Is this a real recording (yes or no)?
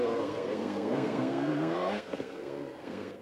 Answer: no